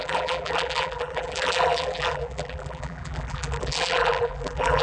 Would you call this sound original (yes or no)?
no